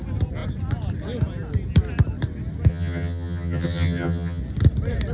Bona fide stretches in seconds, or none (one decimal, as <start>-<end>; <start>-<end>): 0.0-2.7; 4.4-5.1